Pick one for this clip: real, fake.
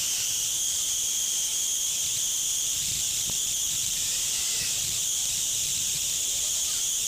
fake